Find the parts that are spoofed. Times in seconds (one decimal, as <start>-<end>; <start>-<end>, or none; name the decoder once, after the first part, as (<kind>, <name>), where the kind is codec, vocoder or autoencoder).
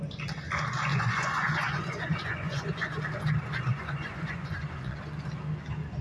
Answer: 0.9-3.0 (vocoder, Vocos); 3.7-5.1